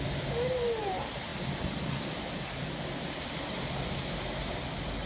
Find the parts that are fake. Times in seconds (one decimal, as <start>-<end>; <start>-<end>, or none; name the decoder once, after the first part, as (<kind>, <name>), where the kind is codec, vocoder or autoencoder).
none